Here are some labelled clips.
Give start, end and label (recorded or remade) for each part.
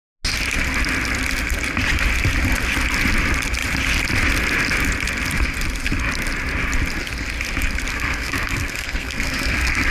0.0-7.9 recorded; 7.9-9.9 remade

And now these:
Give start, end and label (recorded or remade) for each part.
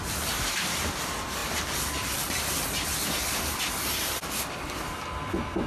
0.0-5.7 recorded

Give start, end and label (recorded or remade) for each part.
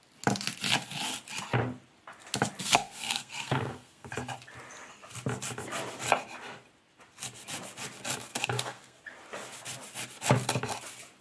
0.0-2.6 recorded; 2.6-4.1 remade; 4.1-8.3 recorded; 8.3-9.0 remade; 9.0-11.2 recorded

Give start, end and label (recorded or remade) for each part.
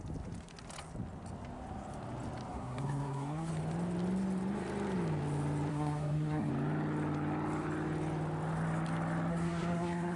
0.0-2.5 recorded; 2.5-3.5 remade; 3.5-5.7 recorded; 5.7-6.5 remade; 6.5-9.3 recorded; 9.3-10.2 remade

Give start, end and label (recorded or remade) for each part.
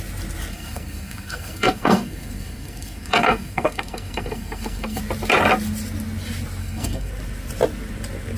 0.0-0.5 recorded; 0.5-5.0 remade; 5.0-6.6 recorded; 6.6-7.1 remade; 7.1-8.4 recorded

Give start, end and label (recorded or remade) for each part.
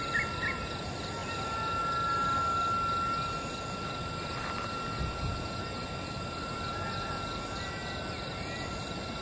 0.0-9.2 recorded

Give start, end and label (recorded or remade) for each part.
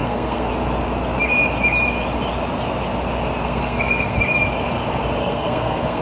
0.0-0.5 remade; 0.5-3.4 recorded; 3.4-4.2 remade; 4.2-5.2 recorded; 5.2-6.0 remade